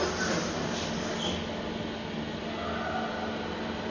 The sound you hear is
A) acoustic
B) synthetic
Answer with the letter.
A